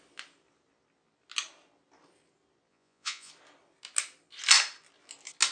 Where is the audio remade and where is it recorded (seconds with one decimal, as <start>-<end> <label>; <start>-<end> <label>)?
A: 0.0-2.7 recorded; 2.7-3.3 remade; 3.3-5.5 recorded